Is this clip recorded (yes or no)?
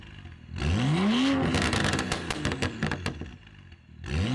yes